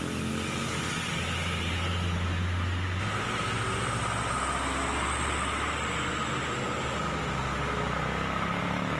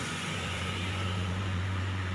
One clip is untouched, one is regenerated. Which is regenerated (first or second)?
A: second